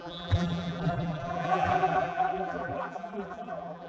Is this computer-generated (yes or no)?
yes